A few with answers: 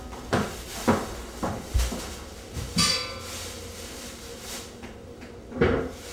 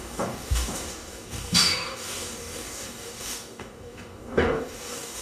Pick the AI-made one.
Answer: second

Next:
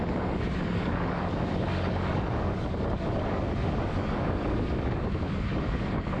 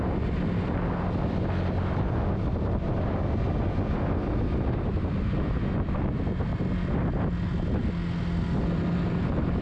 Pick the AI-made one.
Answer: first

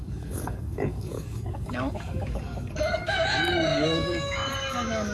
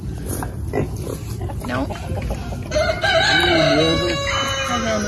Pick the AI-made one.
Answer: first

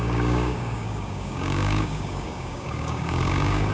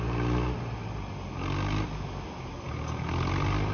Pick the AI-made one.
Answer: first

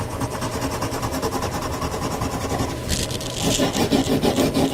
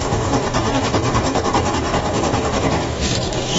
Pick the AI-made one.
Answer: second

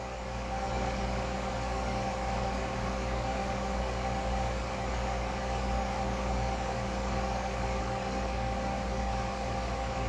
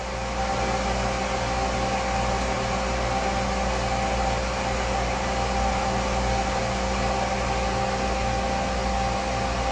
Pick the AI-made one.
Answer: first